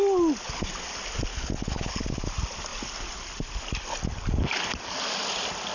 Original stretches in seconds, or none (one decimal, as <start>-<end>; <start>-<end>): 0.0-1.3; 2.0-5.7